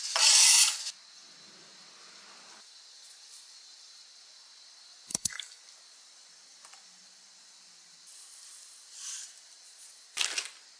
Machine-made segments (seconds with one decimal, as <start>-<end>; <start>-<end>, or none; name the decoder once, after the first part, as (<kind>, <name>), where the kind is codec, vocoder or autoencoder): 5.1-5.6 (codec, SNAC)